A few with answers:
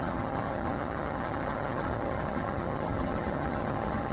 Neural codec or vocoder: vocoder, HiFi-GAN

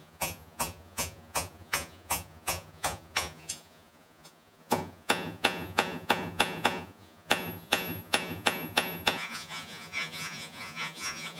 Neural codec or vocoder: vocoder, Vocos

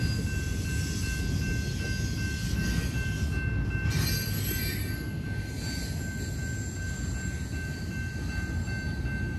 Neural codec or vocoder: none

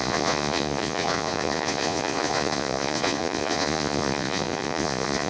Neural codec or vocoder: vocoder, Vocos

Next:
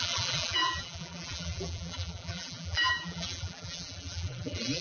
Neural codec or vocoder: vocoder, BigVGAN v2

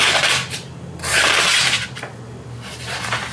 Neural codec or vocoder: vocoder, BigVGAN v2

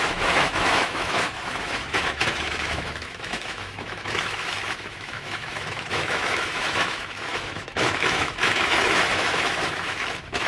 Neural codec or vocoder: autoencoder, DAC-VAE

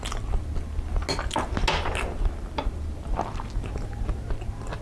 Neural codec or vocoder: none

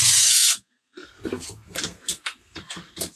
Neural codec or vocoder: codec, SNAC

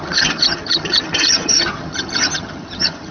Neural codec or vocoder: vocoder, HiFi-GAN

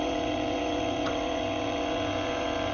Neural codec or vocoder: vocoder, WaveNeXt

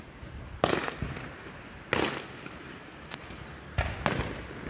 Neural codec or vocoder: none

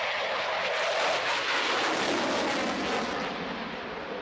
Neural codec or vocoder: none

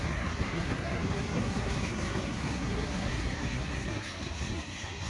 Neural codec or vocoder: codec, SNAC